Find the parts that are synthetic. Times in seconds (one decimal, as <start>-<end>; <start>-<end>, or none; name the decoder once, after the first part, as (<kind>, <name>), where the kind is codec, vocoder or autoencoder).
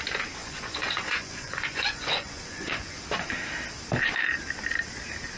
0.4-3.0 (vocoder, Vocos)